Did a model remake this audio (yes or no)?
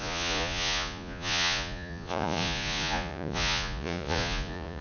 yes